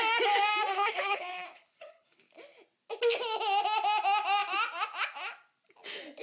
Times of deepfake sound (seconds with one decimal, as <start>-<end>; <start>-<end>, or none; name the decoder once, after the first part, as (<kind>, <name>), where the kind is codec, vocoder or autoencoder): 0.7-2.2 (codec, HILCodec)